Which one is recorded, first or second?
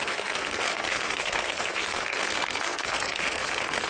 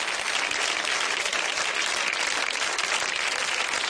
second